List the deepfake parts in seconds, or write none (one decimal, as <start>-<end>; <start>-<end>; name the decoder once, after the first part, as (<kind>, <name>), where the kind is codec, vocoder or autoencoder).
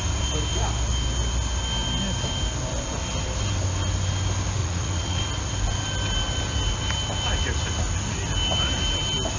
4.6-5.2 (vocoder, Vocos)